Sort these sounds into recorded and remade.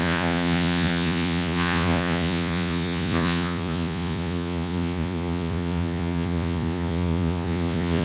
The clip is remade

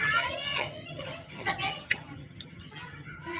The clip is remade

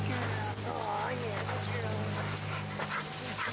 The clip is recorded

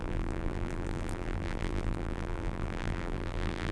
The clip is remade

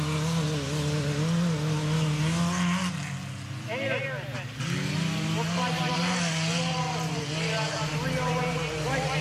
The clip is recorded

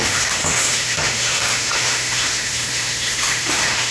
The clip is remade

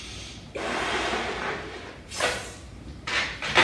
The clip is remade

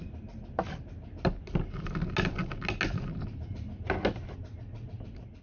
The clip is recorded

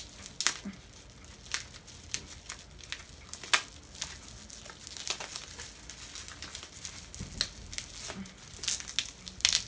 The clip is recorded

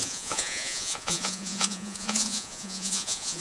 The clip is remade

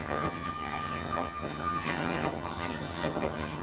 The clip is remade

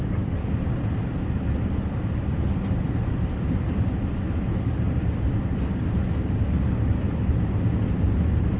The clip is recorded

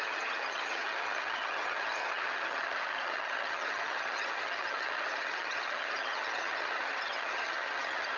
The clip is remade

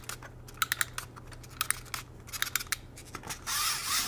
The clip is recorded